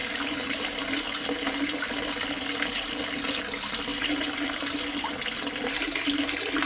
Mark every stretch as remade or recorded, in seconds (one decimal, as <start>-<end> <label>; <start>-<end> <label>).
0.0-6.7 recorded